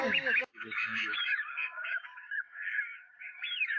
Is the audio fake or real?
fake